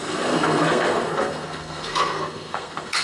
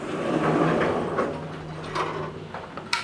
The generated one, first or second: first